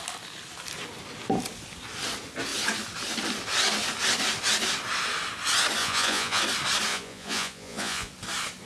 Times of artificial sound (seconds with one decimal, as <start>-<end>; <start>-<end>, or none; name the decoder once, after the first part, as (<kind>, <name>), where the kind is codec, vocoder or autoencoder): 5.8-6.4 (vocoder, Vocos); 6.9-8.1

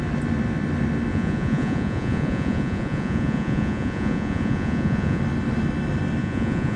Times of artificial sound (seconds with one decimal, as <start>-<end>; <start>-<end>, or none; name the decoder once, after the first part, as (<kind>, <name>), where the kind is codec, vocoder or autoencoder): 1.1-5.2 (vocoder, Vocos); 6.2-6.8